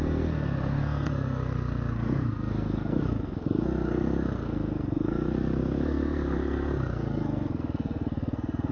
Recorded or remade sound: remade